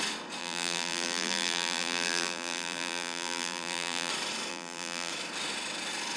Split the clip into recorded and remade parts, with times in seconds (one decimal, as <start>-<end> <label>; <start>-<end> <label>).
0.0-0.4 recorded; 0.4-4.1 remade; 4.1-4.5 recorded; 4.5-5.1 remade; 5.1-6.2 recorded

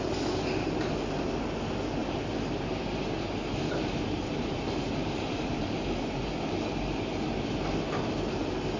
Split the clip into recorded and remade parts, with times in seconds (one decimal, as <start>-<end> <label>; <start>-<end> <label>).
0.0-2.0 recorded; 2.0-6.3 remade; 6.3-8.8 recorded

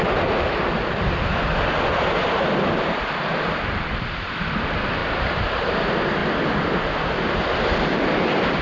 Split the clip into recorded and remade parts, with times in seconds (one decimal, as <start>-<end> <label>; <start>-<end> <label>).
0.0-5.0 recorded; 5.0-5.7 remade; 5.7-8.6 recorded

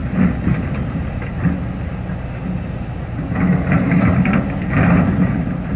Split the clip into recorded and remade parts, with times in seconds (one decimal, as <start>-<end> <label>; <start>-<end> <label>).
0.0-5.8 recorded

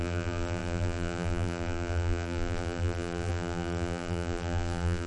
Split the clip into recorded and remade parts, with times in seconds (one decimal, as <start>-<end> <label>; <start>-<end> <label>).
0.0-5.1 remade

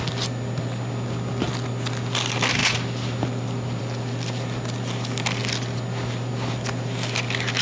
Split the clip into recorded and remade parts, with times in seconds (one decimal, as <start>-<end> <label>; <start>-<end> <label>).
0.0-7.6 recorded

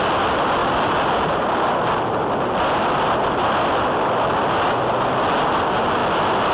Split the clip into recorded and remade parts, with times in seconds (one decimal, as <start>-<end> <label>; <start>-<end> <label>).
0.0-6.5 recorded

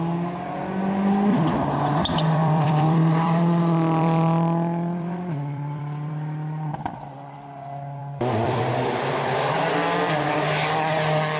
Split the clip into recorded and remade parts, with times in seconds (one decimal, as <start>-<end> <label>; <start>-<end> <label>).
0.0-1.3 recorded; 1.3-6.1 remade; 6.1-8.0 recorded; 8.0-9.7 remade; 9.7-11.4 recorded